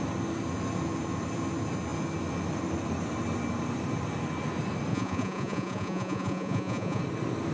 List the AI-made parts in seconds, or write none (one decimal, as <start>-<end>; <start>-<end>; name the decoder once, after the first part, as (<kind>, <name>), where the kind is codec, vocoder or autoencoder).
4.9-7.0 (vocoder, Vocos)